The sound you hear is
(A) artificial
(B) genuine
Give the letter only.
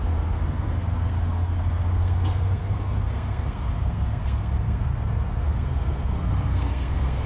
A